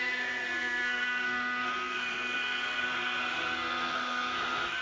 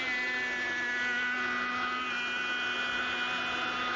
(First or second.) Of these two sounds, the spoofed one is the first